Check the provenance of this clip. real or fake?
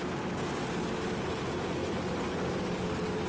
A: real